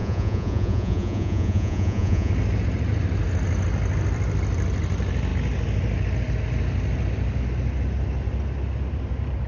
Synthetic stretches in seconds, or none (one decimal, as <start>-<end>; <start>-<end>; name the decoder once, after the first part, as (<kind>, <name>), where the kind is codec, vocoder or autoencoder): 0.0-2.3 (vocoder, Vocos)